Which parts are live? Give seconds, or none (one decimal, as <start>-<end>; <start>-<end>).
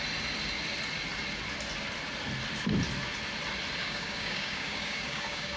0.0-3.8